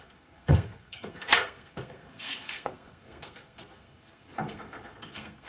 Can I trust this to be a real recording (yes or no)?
no